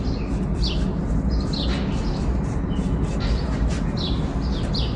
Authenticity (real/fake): real